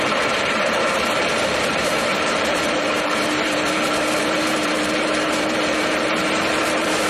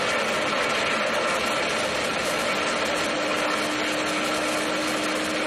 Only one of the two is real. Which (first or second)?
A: second